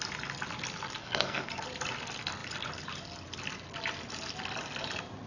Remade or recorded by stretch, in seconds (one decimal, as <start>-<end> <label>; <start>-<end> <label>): 0.0-1.0 recorded; 1.0-1.5 remade; 1.5-5.3 recorded